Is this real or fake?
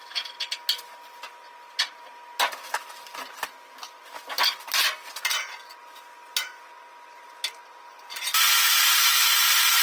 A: real